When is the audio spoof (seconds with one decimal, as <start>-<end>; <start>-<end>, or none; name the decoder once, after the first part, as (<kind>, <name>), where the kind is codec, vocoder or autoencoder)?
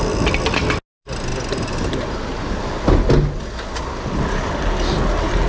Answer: none